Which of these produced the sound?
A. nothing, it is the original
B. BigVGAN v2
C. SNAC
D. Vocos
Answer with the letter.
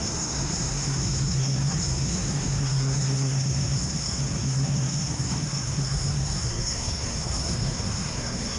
C